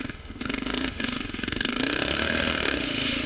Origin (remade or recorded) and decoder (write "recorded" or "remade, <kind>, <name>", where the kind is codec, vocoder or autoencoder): remade, autoencoder, DAC-VAE